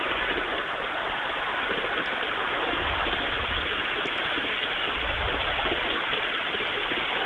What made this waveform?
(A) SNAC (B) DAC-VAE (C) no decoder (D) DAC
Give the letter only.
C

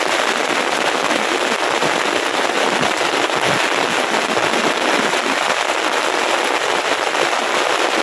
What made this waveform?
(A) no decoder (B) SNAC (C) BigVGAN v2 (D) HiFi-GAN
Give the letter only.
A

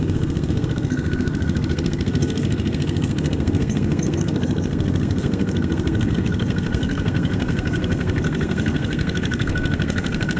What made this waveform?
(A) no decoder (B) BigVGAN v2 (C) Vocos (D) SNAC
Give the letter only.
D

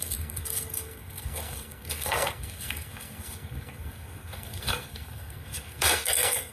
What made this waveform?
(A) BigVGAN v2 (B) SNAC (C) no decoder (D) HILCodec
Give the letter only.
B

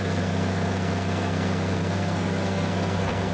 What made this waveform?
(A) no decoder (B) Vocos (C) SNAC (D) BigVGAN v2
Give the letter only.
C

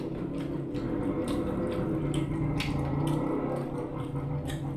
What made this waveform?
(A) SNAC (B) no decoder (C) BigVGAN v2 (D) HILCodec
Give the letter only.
B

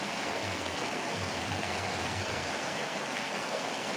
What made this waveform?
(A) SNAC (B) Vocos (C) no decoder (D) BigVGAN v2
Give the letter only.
A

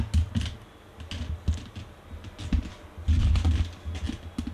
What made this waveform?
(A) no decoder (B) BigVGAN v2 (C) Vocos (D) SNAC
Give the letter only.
A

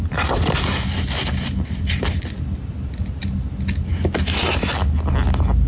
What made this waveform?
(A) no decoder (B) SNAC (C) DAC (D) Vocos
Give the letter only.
A